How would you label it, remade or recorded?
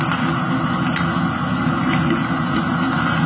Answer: recorded